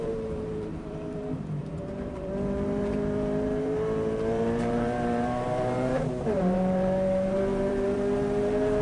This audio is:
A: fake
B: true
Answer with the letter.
A